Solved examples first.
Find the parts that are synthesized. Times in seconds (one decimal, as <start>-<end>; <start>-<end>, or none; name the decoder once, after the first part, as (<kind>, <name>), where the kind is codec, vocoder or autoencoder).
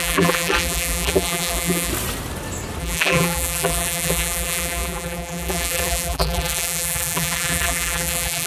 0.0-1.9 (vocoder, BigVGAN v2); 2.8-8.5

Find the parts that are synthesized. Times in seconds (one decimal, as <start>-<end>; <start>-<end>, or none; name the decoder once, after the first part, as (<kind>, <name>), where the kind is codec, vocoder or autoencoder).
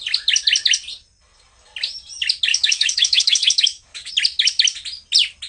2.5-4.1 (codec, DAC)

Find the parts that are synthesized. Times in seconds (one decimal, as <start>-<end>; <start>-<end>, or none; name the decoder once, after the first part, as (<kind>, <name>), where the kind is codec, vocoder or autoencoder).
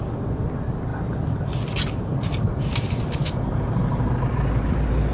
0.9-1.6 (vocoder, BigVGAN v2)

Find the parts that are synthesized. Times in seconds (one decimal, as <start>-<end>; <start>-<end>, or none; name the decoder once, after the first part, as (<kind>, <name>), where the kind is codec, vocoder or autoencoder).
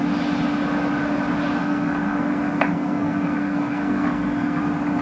1.6-4.6 (codec, SNAC)